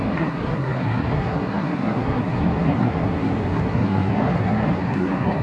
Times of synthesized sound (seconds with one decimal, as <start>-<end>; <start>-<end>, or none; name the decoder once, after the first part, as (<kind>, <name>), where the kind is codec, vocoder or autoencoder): 0.0-5.4 (codec, SNAC)